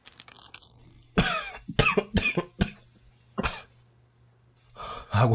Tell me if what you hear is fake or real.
real